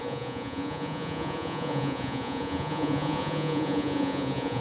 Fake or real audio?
fake